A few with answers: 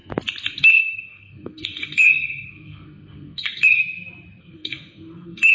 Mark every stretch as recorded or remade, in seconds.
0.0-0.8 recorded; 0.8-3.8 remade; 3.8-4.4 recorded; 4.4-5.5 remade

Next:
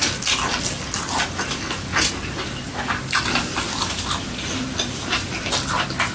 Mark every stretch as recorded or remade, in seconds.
0.0-6.1 recorded

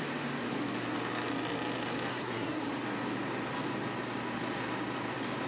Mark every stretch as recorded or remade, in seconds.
0.0-2.1 recorded; 2.1-2.6 remade; 2.6-5.5 recorded

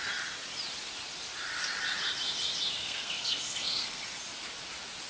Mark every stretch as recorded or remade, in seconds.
0.0-2.8 recorded; 2.8-4.0 remade; 4.0-5.1 recorded

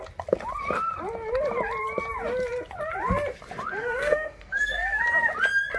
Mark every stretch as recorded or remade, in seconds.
0.0-3.8 recorded; 3.8-5.0 remade; 5.0-5.8 recorded

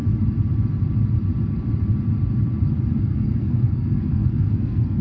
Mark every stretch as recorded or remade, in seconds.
0.0-3.0 recorded; 3.0-5.0 remade

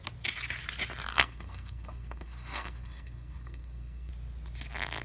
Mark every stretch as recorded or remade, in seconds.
0.0-1.1 recorded; 1.1-4.1 remade; 4.1-5.0 recorded

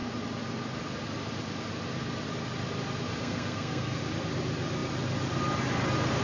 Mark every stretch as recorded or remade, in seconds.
0.0-3.2 recorded; 3.2-4.0 remade; 4.0-6.2 recorded